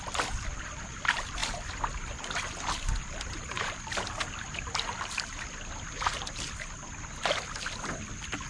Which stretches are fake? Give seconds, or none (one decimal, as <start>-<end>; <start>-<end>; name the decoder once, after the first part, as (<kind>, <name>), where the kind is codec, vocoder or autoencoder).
none